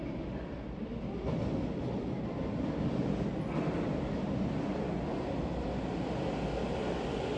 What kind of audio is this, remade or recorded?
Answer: recorded